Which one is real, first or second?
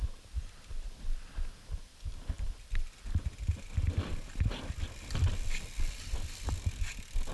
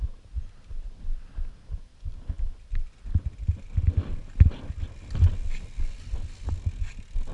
second